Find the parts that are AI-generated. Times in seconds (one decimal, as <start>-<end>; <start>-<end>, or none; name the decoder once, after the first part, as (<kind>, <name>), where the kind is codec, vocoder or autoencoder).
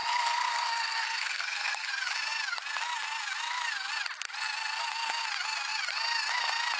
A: 0.0-1.9 (codec, SNAC)